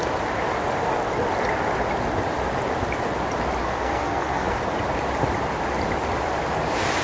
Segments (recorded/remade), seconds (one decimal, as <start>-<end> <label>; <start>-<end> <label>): 0.0-3.6 recorded; 3.6-4.6 remade; 4.6-7.0 recorded